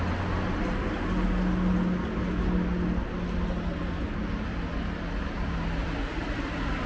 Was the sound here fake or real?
real